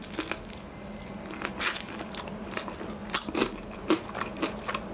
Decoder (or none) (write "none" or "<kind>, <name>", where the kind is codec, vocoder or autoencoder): none